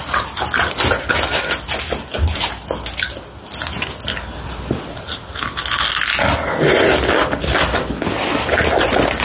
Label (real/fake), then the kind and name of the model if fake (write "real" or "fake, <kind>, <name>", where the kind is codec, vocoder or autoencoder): real